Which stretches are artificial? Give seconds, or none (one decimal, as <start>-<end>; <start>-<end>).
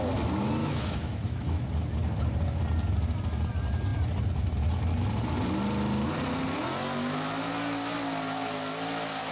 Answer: 0.6-1.6